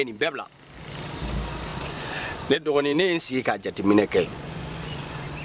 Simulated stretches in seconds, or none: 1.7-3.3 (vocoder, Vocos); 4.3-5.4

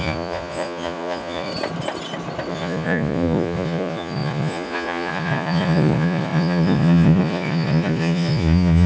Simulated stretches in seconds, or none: 0.0-1.5 (vocoder, Vocos); 2.5-8.9